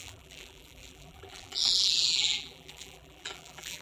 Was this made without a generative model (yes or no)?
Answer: no